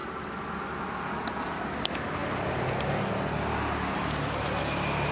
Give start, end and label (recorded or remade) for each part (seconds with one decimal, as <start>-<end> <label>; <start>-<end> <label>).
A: 0.0-5.1 recorded